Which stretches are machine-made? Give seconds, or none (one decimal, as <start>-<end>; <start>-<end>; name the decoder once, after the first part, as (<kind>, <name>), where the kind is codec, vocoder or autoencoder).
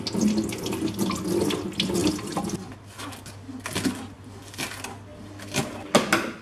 none